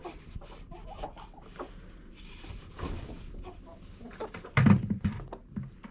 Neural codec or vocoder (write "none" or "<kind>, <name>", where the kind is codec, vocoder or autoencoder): vocoder, BigVGAN v2